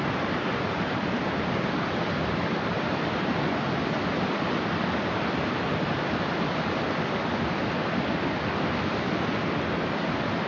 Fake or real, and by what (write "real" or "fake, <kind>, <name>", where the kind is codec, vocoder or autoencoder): real